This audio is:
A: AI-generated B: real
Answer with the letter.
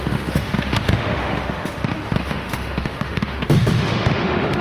A